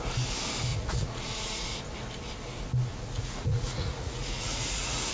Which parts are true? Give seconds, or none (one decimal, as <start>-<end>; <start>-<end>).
0.0-0.7; 1.8-2.9